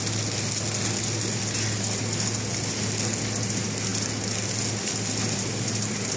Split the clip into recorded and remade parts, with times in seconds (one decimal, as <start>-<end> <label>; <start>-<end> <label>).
0.0-6.2 recorded